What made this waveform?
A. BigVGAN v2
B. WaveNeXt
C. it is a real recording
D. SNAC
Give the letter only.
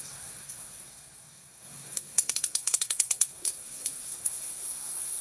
D